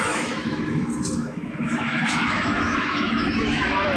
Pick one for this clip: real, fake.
fake